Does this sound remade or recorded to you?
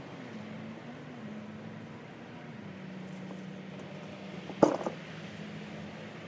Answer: recorded